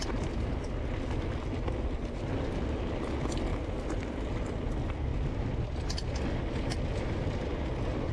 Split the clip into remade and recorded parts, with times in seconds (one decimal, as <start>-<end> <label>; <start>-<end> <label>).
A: 0.0-8.1 recorded